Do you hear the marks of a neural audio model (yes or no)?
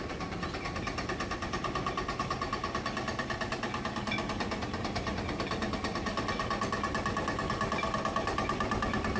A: no